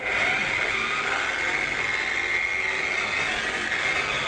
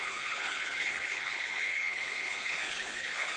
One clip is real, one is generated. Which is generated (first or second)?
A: second